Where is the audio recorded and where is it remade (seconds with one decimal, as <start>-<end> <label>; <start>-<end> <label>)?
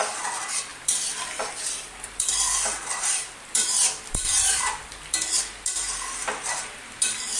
0.0-0.7 recorded; 0.7-5.1 remade; 5.1-7.4 recorded